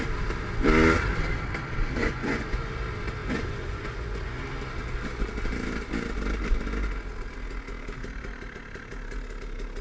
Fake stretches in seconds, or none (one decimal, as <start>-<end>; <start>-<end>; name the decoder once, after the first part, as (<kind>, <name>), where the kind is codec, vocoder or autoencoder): 2.0-2.7 (vocoder, Vocos); 3.2-4.4